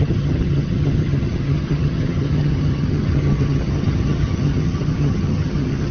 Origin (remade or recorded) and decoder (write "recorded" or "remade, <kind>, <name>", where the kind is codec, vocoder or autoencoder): remade, vocoder, HiFi-GAN